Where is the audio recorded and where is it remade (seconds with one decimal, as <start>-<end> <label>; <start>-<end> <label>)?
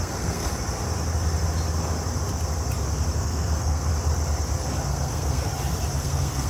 0.0-0.5 remade; 0.5-3.2 recorded; 3.2-3.9 remade; 3.9-4.9 recorded; 4.9-5.5 remade; 5.5-6.0 recorded; 6.0-6.5 remade